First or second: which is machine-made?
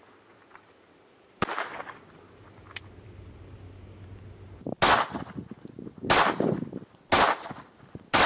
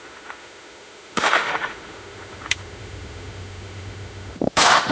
second